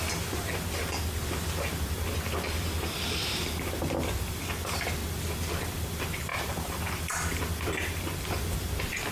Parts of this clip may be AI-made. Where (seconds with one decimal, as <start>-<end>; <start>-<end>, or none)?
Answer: 6.3-7.4